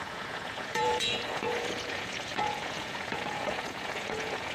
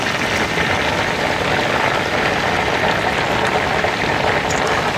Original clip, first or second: second